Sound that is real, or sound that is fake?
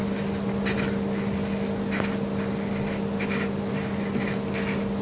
real